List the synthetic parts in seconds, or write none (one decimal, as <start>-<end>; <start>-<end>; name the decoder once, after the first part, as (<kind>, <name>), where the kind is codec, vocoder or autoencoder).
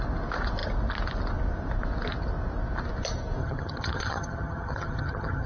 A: 3.4-5.5 (vocoder, HiFi-GAN)